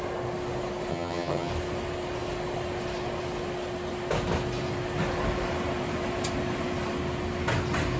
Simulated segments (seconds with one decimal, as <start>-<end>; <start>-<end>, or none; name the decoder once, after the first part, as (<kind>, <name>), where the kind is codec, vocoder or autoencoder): 0.9-1.5 (vocoder, HiFi-GAN)